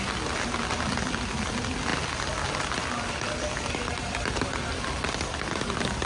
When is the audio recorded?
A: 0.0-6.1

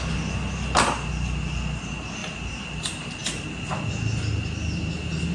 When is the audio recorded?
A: 0.0-2.2; 2.8-5.3

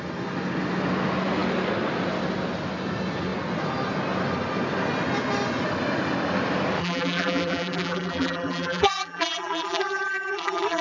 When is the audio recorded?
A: 0.0-6.8

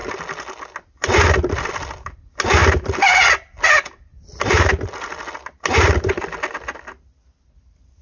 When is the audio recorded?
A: 0.0-8.0